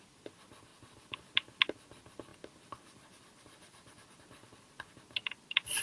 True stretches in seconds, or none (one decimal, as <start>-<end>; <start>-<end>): 0.0-5.8